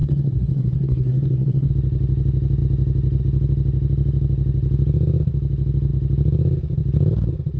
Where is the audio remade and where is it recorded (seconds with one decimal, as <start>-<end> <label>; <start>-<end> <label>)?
0.0-1.7 remade; 1.7-7.6 recorded